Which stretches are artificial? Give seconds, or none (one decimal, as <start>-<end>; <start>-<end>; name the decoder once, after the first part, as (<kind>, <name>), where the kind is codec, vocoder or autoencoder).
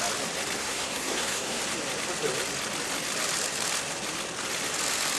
0.6-1.6 (codec, SNAC)